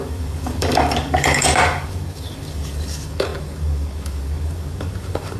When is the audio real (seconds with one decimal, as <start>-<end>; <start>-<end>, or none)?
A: none